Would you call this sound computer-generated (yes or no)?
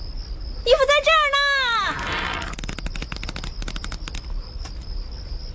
no